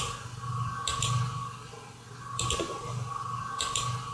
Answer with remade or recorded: recorded